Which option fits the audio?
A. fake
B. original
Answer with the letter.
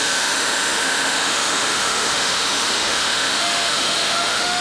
A